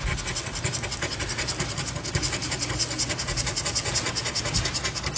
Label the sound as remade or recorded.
recorded